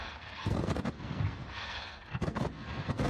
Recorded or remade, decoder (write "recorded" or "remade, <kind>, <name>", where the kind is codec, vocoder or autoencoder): remade, codec, SNAC